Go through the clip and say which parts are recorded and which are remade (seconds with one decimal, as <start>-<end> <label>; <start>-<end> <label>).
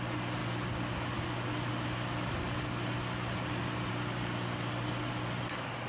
0.0-5.9 recorded